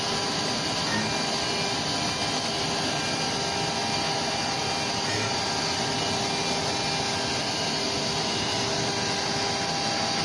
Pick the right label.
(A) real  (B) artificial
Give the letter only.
A